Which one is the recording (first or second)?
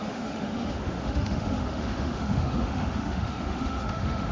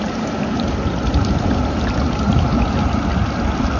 second